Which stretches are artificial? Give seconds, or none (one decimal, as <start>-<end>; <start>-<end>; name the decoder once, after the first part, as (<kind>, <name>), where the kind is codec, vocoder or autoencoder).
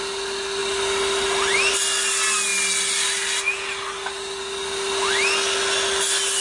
none